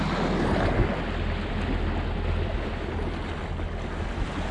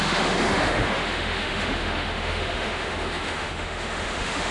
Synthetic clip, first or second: second